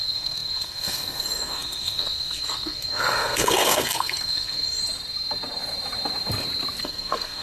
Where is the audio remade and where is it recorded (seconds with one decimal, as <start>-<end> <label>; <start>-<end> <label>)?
0.0-4.8 remade; 4.8-6.8 recorded; 6.8-7.4 remade

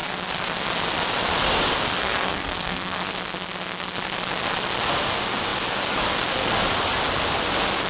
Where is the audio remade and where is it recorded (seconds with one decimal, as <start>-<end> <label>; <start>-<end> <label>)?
0.0-2.0 recorded; 2.0-3.0 remade; 3.0-7.9 recorded

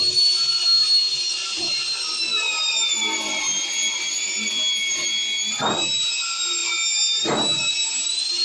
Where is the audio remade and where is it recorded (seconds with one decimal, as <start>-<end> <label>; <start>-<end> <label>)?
0.0-8.4 recorded